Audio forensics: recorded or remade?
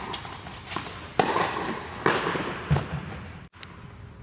recorded